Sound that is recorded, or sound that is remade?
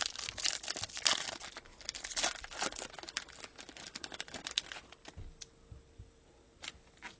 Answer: recorded